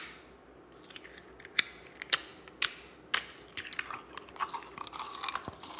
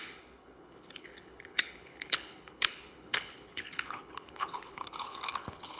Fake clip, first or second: second